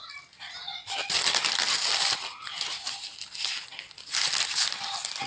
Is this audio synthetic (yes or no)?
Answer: no